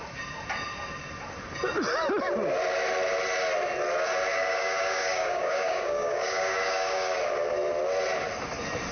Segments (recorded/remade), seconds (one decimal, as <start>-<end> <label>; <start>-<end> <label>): 0.0-4.3 recorded; 4.3-7.2 remade; 7.2-8.9 recorded